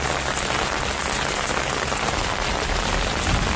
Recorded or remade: recorded